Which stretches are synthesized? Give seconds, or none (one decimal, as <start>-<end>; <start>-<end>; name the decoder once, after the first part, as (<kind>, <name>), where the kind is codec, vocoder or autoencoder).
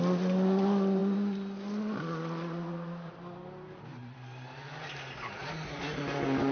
none